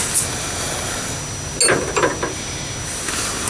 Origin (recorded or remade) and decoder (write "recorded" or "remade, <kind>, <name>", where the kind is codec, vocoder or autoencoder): recorded